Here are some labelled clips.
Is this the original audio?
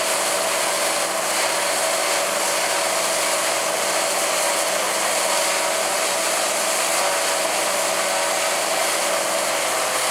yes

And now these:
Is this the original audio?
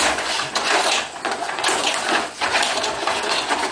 no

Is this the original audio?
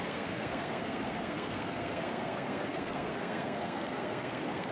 no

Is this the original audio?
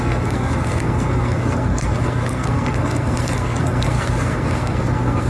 no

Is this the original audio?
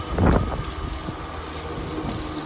yes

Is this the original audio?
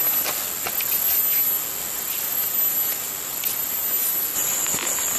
yes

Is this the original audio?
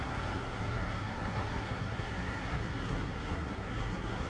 no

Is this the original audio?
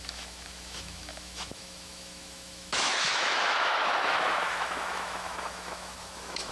no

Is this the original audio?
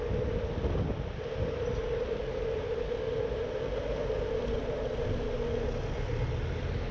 yes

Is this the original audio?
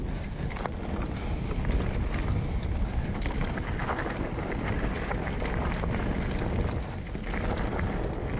yes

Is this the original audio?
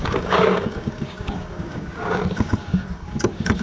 no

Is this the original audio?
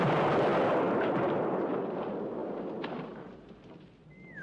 yes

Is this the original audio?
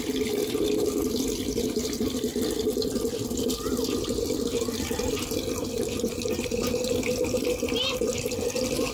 yes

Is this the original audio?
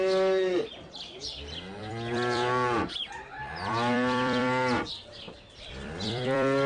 no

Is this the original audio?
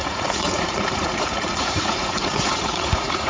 no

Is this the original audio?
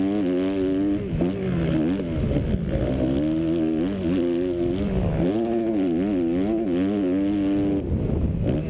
yes